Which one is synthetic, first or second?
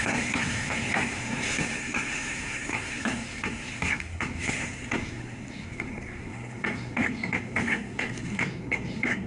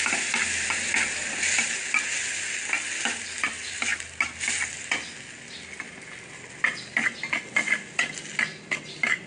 first